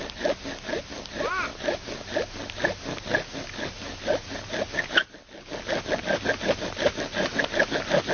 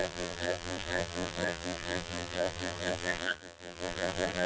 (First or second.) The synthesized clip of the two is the second